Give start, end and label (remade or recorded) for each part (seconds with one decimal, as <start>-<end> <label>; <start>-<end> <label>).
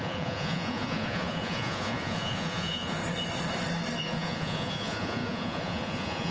0.0-3.0 remade; 3.0-4.0 recorded; 4.0-6.3 remade